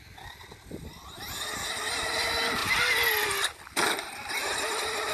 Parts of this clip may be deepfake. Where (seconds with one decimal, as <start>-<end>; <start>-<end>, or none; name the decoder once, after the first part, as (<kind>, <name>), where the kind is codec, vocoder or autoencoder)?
none